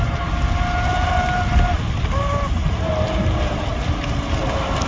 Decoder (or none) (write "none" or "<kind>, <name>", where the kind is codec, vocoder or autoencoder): none